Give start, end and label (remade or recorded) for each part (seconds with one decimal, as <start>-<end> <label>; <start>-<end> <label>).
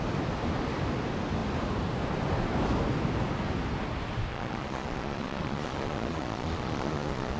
0.0-4.3 recorded; 4.3-7.4 remade